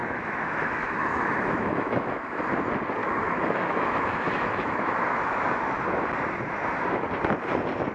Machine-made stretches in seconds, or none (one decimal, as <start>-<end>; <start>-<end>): 0.0-2.4; 3.0-5.8